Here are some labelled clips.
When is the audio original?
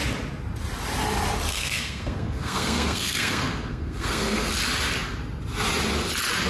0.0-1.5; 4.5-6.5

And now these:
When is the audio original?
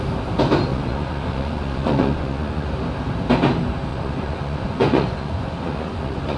0.0-0.7; 2.7-3.9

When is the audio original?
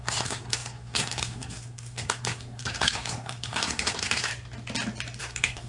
4.3-5.2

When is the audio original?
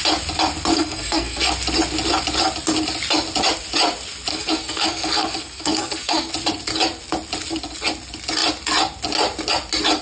0.0-0.7; 1.5-4.3; 6.3-10.0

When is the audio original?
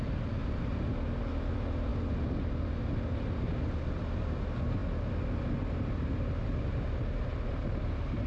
0.0-8.3